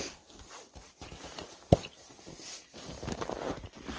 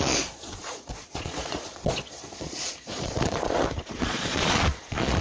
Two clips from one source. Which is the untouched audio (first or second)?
first